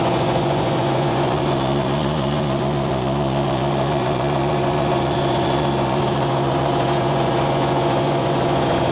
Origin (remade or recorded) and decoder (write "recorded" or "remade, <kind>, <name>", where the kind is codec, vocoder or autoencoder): remade, vocoder, Vocos